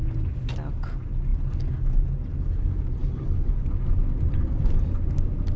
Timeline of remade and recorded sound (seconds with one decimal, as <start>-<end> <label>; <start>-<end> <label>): 0.0-3.0 recorded; 3.0-3.5 remade; 3.5-5.6 recorded